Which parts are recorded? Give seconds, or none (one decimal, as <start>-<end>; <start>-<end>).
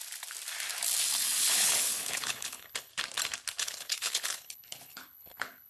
0.0-1.4; 2.9-3.6